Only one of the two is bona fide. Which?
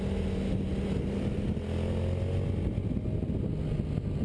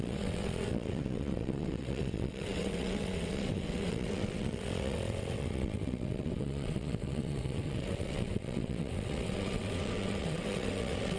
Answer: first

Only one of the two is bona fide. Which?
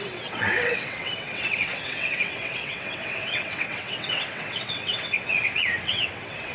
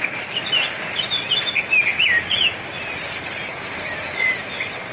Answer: second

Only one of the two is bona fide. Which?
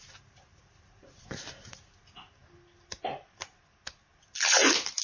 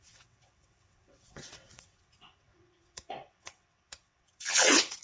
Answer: first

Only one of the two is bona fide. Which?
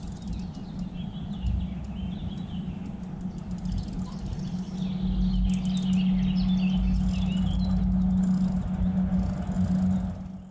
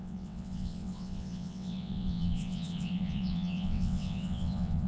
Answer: first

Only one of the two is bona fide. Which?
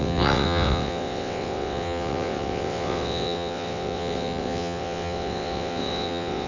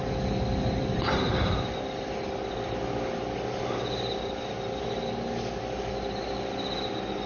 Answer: second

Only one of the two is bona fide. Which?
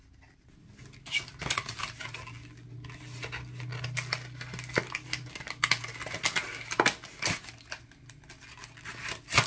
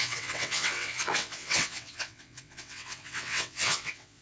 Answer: first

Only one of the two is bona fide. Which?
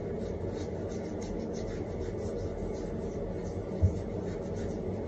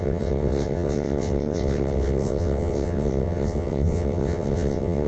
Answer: first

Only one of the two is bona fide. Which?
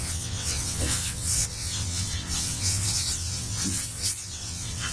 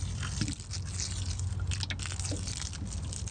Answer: second